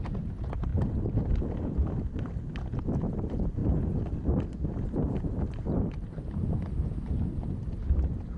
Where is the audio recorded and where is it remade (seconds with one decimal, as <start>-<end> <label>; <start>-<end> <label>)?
0.0-8.4 recorded